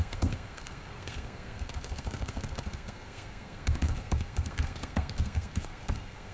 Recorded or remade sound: remade